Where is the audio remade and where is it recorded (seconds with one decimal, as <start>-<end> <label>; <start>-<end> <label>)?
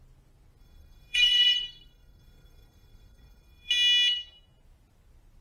0.0-0.6 recorded; 0.6-3.7 remade; 3.7-5.4 recorded